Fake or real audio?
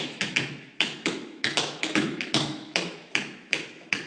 fake